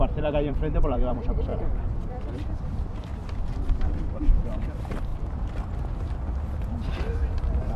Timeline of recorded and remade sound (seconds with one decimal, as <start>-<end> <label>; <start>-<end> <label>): 0.0-3.1 remade; 3.1-3.6 recorded; 3.6-5.1 remade; 5.1-6.7 recorded; 6.7-7.8 remade